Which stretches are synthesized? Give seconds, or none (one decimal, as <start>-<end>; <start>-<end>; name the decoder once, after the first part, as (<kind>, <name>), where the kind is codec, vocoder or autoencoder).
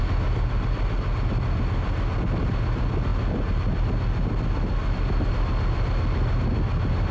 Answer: none